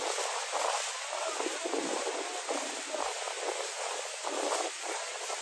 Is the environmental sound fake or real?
real